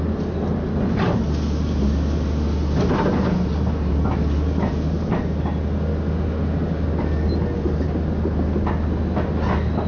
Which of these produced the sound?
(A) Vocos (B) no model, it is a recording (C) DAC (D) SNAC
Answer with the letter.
B